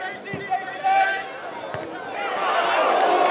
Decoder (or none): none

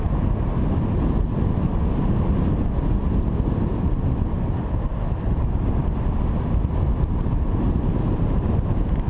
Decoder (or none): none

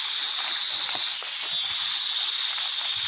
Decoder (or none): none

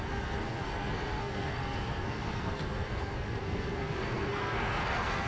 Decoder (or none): codec, SNAC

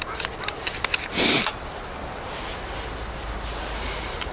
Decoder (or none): none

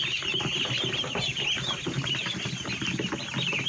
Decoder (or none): none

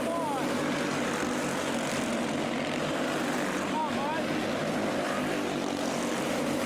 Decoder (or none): none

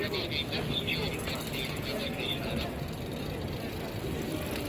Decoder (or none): none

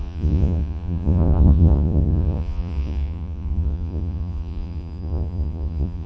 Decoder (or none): vocoder, Vocos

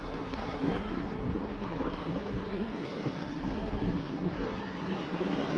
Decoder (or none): codec, SNAC